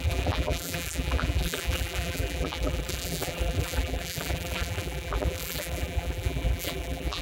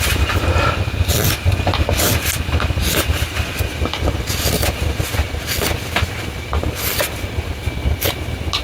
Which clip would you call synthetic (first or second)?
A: first